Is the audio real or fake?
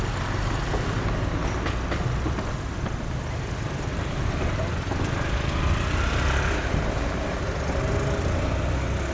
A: real